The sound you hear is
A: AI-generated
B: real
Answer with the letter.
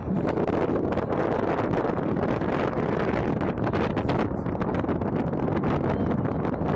B